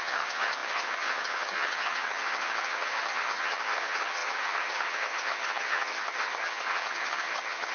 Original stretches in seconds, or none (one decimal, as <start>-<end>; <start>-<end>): none